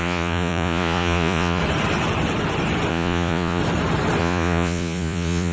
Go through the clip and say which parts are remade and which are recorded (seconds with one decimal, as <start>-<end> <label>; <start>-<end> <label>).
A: 0.0-1.6 remade; 1.6-2.9 recorded; 2.9-3.6 remade; 3.6-4.2 recorded; 4.2-5.5 remade